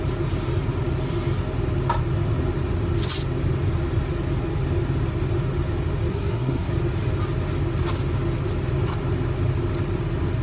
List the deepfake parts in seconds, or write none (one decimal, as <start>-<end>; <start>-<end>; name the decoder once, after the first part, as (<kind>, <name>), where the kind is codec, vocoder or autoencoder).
6.1-6.7 (codec, SNAC)